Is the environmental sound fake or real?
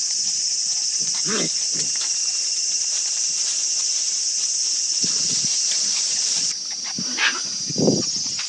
real